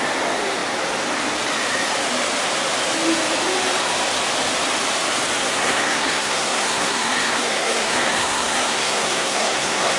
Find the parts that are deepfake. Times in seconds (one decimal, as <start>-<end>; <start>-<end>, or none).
5.4-10.0